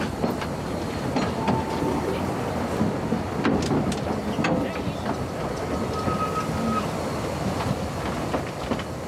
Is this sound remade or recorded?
recorded